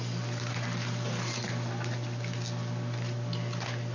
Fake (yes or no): no